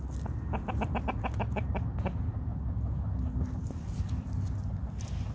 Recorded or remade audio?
recorded